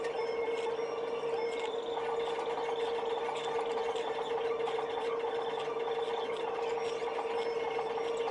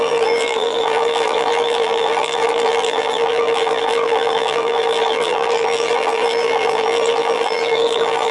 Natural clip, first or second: first